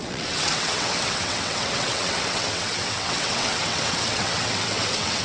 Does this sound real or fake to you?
fake